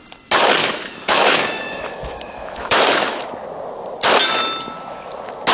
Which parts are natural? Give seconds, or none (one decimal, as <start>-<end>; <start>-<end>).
0.0-0.6; 3.3-5.5